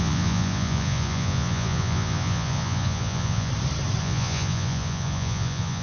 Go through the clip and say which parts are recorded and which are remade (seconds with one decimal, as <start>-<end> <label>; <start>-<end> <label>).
0.0-3.5 remade; 3.5-4.0 recorded; 4.0-5.8 remade